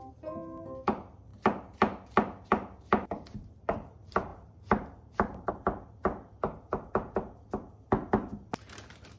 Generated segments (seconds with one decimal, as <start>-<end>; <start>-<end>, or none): 0.0-1.3; 3.6-6.1; 8.5-9.2